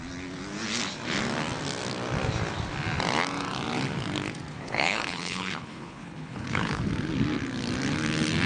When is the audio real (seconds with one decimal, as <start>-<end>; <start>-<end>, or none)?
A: 0.0-4.5; 6.8-8.5

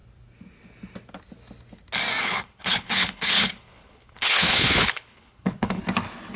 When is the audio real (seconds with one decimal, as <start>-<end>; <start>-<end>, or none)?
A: 0.0-2.2; 5.8-6.4

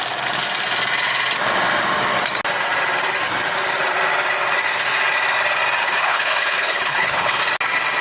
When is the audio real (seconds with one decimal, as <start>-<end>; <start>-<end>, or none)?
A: 0.0-5.8; 7.4-8.0

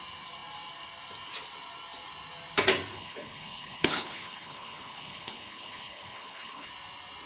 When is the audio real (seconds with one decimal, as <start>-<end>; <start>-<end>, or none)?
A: 0.0-2.9; 6.7-7.3

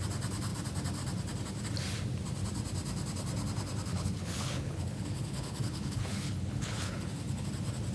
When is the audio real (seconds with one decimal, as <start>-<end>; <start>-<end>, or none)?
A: 0.0-3.9; 7.5-7.9

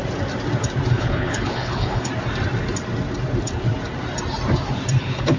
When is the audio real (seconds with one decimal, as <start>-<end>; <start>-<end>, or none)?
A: 0.0-0.9; 2.1-5.0